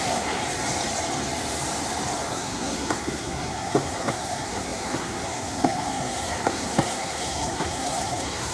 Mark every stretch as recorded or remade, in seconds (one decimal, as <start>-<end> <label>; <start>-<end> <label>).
0.0-0.4 remade; 0.4-2.3 recorded; 2.3-8.5 remade